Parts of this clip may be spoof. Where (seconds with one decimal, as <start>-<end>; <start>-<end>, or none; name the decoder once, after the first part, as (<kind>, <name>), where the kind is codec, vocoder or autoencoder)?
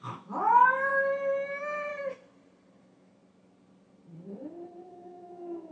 0.0-0.9 (autoencoder, DAC-VAE); 1.5-1.9; 2.8-3.2; 4.9-5.7